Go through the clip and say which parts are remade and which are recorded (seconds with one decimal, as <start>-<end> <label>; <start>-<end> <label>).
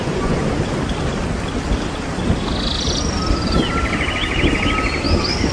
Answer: 0.0-0.5 remade; 0.5-5.5 recorded